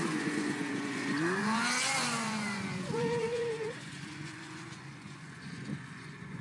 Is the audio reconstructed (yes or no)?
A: yes